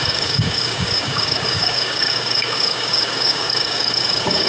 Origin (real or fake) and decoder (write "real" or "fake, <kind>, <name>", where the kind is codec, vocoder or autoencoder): fake, codec, DAC